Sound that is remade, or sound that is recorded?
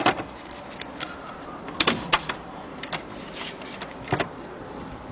remade